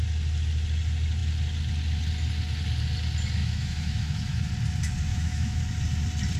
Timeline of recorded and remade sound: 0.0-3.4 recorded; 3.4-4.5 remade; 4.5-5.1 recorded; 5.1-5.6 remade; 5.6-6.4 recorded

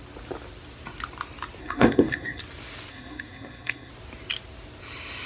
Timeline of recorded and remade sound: 0.0-1.6 recorded; 1.6-2.4 remade; 2.4-2.9 recorded; 2.9-3.9 remade; 3.9-5.3 recorded

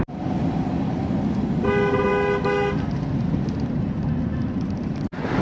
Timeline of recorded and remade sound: 0.0-5.4 recorded